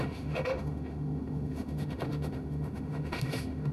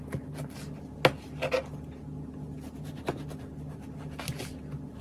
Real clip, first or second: second